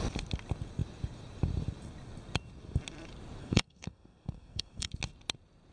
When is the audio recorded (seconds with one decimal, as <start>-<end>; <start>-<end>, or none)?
0.0-3.4; 4.9-5.7

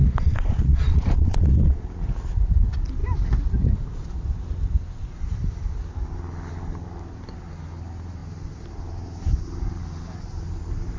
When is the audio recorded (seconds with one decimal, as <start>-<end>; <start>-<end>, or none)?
1.9-11.0

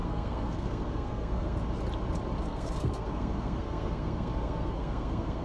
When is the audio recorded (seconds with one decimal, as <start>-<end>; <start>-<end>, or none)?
1.6-2.4